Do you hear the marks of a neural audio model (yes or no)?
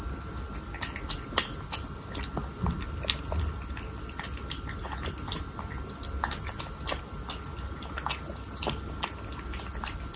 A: no